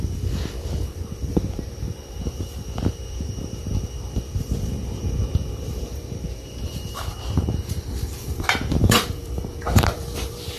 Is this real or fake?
fake